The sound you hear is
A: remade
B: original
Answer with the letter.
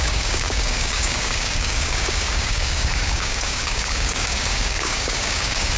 A